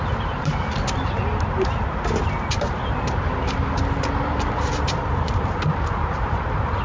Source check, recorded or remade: recorded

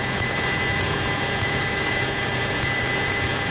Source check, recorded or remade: remade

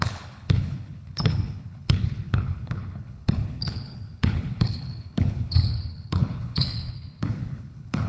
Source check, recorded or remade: remade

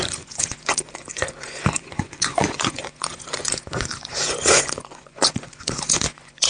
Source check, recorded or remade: remade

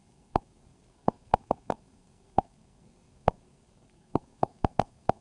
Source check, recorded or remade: remade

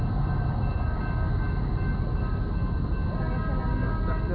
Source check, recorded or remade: recorded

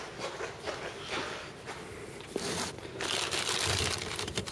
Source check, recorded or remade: recorded